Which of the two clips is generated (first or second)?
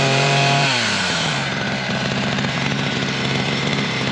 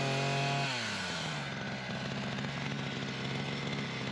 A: first